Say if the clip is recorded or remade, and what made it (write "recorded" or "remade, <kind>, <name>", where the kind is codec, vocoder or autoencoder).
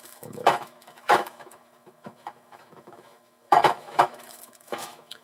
remade, autoencoder, DAC-VAE